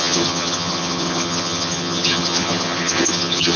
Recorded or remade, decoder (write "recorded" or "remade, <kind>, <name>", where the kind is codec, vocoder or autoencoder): remade, vocoder, HiFi-GAN